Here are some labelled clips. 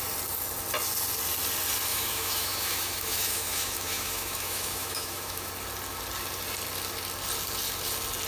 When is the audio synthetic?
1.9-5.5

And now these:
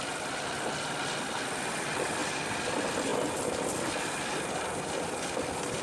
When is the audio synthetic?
none

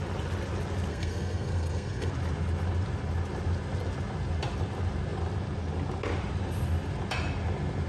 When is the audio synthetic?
0.9-2.1

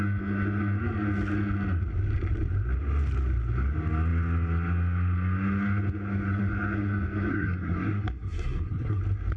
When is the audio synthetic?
7.3-9.0

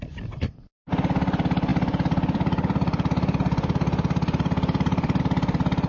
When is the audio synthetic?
1.7-5.2

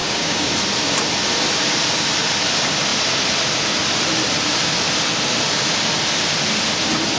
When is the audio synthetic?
0.0-0.5